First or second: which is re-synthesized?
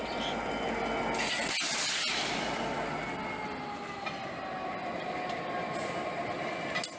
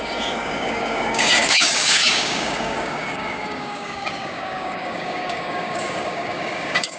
second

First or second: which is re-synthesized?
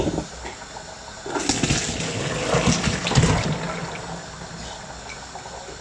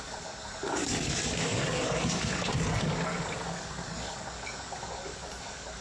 second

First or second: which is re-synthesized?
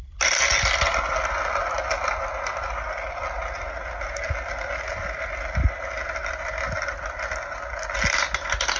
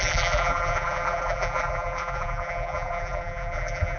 second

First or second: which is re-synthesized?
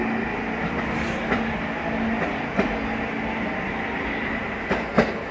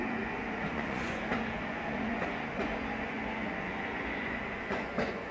second